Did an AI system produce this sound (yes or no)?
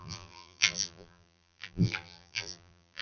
yes